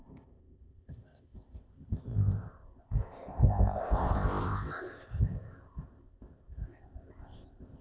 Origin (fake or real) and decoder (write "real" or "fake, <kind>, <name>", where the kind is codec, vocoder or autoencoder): fake, codec, ZipCodec